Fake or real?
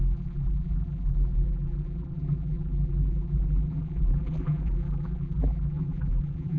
fake